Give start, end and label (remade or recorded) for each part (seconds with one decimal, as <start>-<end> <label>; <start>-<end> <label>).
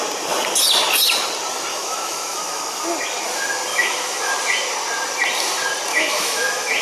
0.0-1.7 recorded; 1.7-2.8 remade; 2.8-3.7 recorded; 3.7-4.3 remade; 4.3-5.9 recorded; 5.9-6.8 remade